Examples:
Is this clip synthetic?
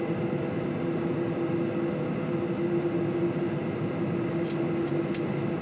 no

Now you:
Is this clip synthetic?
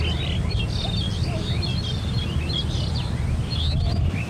no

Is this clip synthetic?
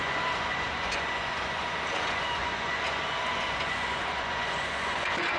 yes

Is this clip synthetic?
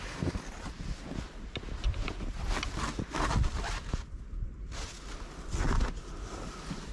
no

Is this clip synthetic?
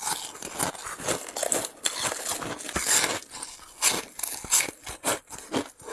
no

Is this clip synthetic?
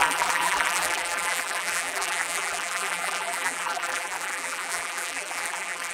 yes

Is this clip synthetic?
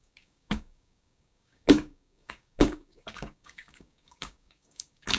yes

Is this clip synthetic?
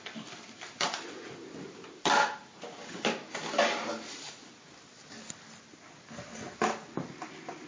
no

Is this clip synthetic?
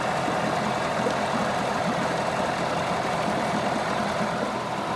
no